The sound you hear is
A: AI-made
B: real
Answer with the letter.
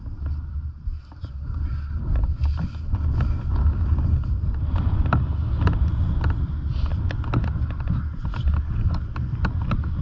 B